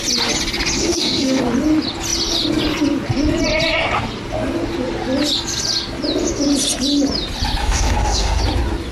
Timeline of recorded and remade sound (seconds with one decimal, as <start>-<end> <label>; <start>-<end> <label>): 0.0-0.8 recorded; 0.8-1.4 remade; 1.4-7.6 recorded; 7.6-8.4 remade; 8.4-8.9 recorded